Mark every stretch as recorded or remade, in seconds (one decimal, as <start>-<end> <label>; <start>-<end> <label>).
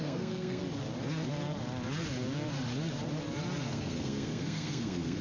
0.0-0.6 remade; 0.6-3.7 recorded; 3.7-5.2 remade